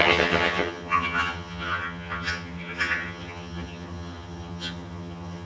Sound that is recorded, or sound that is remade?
remade